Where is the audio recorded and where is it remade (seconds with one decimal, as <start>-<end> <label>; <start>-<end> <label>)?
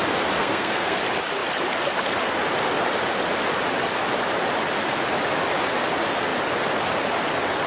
0.0-0.4 recorded; 0.4-1.0 remade; 1.0-7.7 recorded